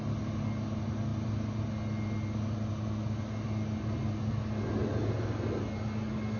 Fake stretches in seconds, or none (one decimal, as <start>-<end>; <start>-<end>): none